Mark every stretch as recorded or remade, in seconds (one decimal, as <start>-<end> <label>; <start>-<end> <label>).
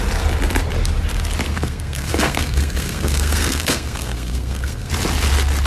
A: 0.0-1.5 recorded; 1.5-4.9 remade; 4.9-5.7 recorded